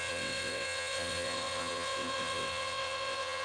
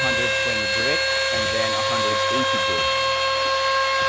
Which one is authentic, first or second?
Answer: second